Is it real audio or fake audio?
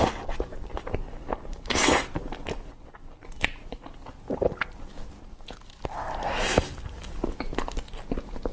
real